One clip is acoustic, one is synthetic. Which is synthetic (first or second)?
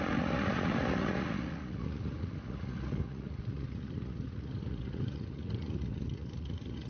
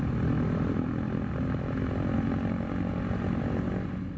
first